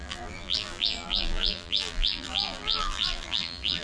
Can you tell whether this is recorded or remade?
remade